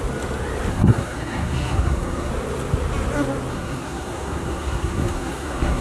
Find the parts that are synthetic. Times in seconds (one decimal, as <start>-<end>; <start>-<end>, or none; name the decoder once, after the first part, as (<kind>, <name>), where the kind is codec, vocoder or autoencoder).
0.7-2.3 (codec, SNAC); 3.5-5.8